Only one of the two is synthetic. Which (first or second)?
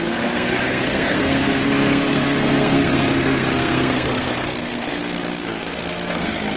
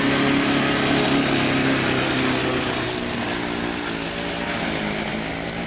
first